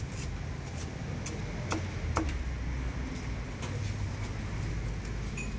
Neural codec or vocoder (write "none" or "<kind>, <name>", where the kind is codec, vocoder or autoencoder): none